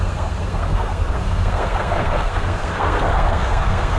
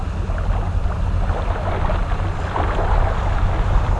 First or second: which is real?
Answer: second